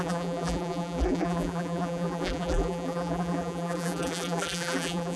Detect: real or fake fake